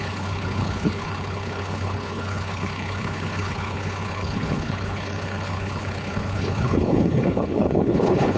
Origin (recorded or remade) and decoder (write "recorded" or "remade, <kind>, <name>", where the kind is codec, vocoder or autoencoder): remade, codec, HILCodec